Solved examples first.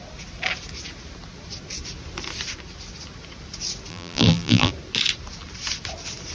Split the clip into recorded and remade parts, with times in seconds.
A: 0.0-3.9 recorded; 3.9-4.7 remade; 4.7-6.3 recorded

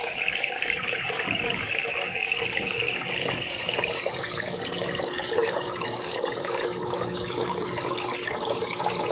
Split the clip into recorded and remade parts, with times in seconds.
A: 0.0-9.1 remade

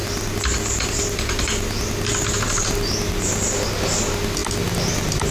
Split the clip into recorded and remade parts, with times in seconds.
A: 0.0-5.3 recorded